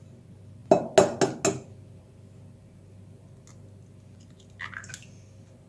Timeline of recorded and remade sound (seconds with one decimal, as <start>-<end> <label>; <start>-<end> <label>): 0.0-5.7 recorded